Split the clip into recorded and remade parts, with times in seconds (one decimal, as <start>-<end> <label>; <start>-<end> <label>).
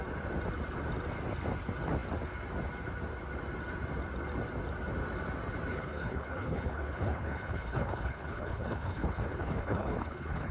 0.0-5.7 recorded; 5.7-10.5 remade